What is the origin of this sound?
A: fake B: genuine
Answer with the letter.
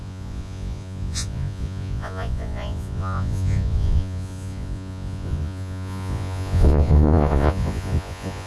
A